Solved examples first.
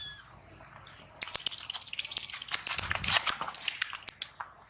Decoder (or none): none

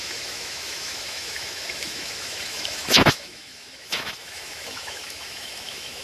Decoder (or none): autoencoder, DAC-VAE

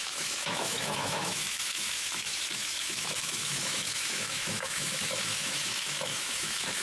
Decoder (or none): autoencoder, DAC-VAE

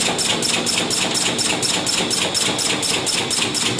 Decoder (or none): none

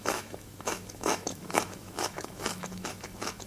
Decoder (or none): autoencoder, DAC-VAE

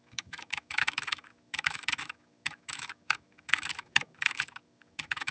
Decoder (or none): autoencoder, DAC-VAE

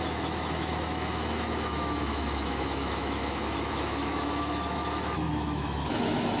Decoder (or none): autoencoder, DAC-VAE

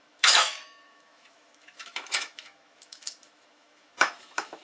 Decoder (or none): autoencoder, DAC-VAE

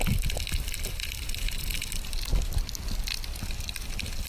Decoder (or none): none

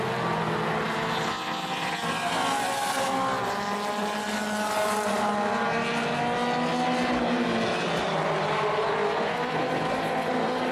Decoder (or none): none